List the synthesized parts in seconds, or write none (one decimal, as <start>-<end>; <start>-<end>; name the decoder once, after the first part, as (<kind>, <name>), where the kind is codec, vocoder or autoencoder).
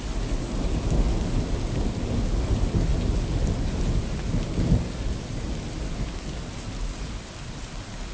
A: none